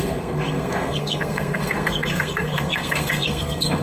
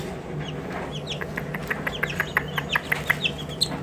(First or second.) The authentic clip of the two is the second